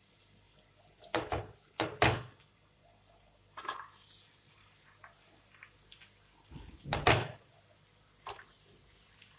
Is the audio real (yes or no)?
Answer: yes